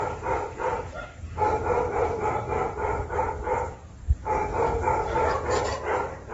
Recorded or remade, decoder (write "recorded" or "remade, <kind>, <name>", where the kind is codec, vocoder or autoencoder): remade, vocoder, BigVGAN v2